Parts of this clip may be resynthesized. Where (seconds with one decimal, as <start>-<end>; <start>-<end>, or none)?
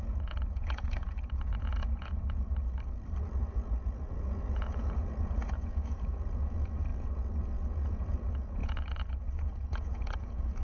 0.0-2.5; 3.4-10.6